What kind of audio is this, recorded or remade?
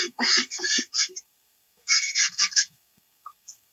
remade